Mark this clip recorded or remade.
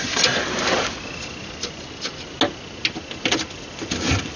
recorded